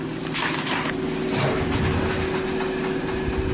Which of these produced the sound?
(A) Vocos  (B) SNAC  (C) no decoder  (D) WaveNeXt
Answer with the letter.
C